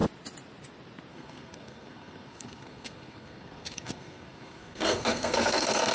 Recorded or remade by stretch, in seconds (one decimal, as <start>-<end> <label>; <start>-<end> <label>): 0.0-1.1 recorded; 1.1-5.9 remade